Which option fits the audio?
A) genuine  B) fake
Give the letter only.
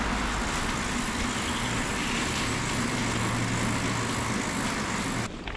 A